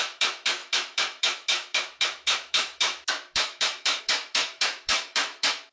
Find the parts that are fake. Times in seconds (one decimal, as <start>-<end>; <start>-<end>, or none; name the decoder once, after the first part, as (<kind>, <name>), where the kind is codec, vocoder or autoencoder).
0.0-5.7 (autoencoder, DAC-VAE)